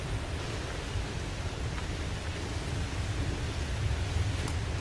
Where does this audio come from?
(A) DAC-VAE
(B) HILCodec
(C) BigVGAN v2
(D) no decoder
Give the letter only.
D